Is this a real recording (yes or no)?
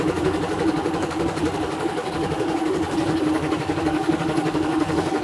no